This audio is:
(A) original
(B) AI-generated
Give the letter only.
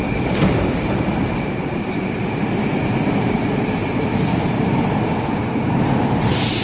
B